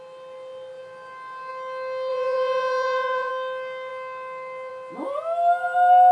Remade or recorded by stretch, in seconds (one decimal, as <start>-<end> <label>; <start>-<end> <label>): 0.0-2.1 recorded; 2.1-3.3 remade; 3.3-6.1 recorded